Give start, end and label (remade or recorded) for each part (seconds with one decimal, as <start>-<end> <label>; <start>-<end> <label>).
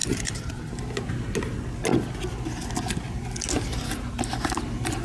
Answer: 0.0-5.0 recorded